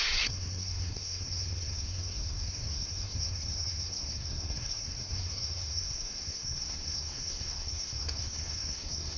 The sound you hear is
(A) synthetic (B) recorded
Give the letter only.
A